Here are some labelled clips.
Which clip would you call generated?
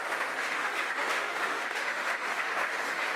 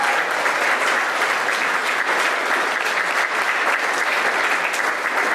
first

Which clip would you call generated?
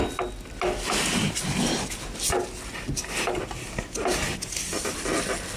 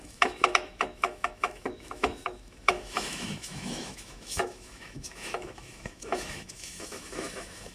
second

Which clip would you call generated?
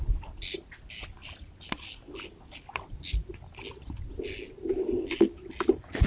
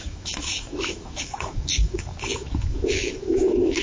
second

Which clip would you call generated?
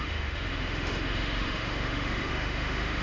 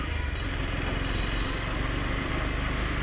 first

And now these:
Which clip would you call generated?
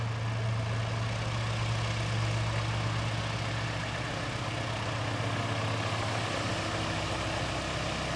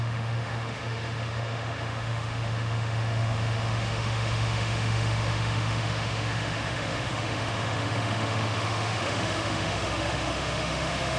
second